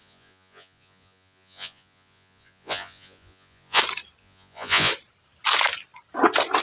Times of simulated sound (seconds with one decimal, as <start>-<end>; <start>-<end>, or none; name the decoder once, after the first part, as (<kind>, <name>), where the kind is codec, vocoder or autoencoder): 0.0-3.8 (vocoder, Vocos); 4.2-4.9